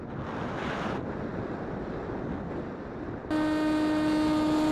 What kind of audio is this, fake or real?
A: real